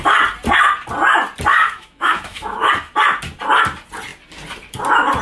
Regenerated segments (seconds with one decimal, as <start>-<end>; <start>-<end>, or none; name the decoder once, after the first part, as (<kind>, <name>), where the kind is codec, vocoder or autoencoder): 1.5-2.7 (autoencoder, DAC-VAE)